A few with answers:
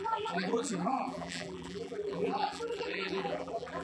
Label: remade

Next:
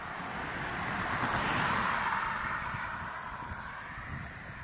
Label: remade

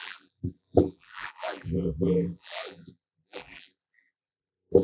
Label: remade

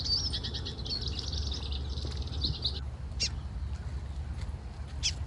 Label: recorded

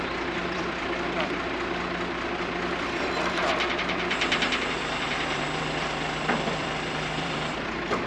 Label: remade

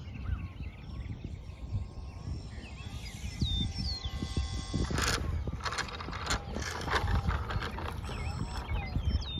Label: recorded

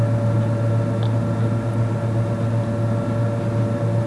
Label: recorded